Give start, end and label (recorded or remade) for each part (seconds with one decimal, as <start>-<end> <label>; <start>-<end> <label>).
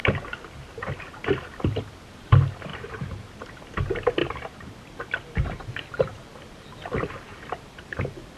0.0-2.7 recorded; 2.7-3.5 remade; 3.5-4.2 recorded; 4.2-5.6 remade; 5.6-8.4 recorded